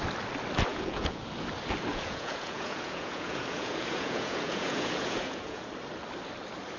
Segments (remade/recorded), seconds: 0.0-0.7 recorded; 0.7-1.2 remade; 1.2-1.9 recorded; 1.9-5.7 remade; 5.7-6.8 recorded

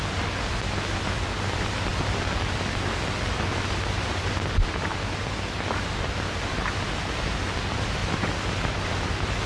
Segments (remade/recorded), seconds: 0.0-9.5 recorded

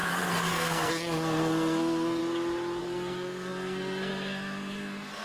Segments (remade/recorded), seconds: 0.0-2.2 remade; 2.2-2.8 recorded; 2.8-5.2 remade